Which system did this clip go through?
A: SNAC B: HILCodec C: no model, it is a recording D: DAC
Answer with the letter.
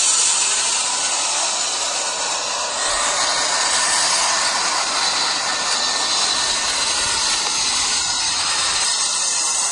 C